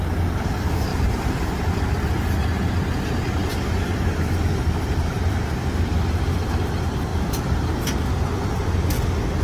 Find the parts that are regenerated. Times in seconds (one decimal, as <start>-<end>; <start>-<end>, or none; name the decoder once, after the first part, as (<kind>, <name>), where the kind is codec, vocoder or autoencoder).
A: 0.9-2.1 (vocoder, BigVGAN v2); 3.4-6.4; 7.1-7.8